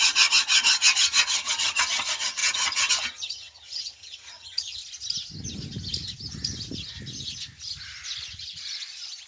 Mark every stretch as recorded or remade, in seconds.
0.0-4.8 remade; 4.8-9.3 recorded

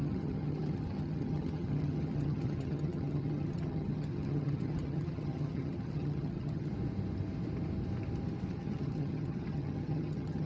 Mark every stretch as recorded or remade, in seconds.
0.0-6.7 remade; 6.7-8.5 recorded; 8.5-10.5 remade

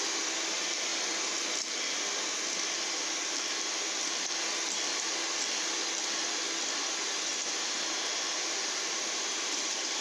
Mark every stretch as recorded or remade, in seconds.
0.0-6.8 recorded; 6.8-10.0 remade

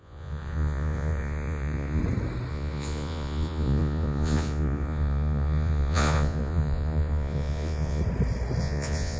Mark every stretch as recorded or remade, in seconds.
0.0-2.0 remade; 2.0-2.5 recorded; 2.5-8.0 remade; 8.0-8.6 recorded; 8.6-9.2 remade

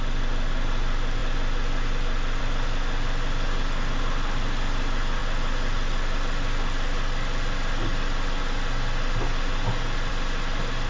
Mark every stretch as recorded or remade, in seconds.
0.0-10.9 recorded